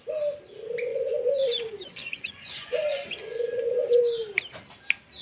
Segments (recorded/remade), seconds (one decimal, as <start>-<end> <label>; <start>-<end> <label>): 0.0-0.9 recorded; 0.9-4.0 remade; 4.0-5.2 recorded